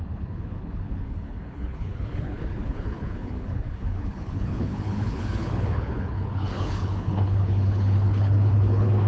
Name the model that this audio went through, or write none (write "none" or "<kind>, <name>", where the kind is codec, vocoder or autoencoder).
codec, HILCodec